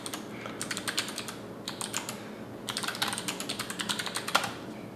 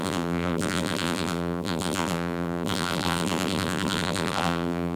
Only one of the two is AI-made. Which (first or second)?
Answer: second